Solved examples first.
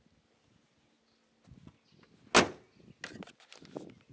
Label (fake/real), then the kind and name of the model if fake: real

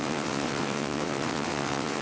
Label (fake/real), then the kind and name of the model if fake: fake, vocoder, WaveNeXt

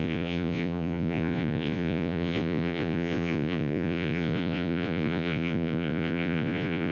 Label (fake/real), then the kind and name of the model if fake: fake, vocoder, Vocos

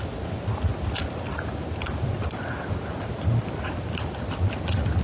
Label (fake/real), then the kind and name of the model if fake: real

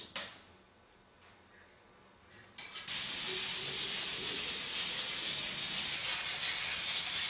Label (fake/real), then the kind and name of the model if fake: real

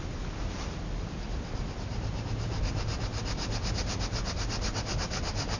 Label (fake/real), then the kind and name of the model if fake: real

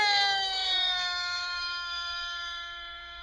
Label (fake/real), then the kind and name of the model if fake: fake, autoencoder, DAC-VAE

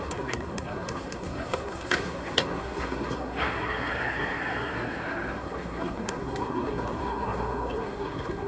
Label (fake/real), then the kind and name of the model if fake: fake, codec, SNAC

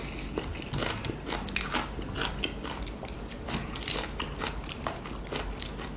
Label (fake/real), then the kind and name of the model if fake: real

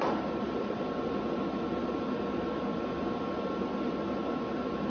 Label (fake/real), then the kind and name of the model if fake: real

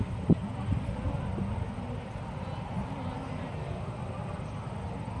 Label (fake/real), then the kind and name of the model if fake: real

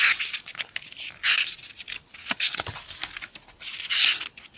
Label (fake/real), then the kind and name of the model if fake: real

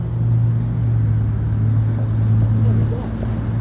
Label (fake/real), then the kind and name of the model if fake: real